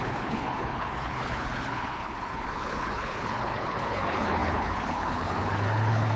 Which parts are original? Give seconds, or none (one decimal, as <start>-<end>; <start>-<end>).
none